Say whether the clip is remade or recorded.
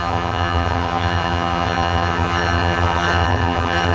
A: remade